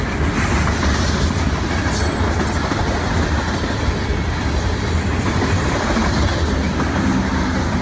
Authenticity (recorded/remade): recorded